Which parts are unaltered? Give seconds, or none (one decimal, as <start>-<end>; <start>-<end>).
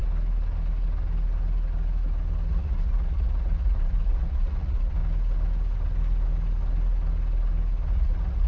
0.0-2.5; 5.0-7.9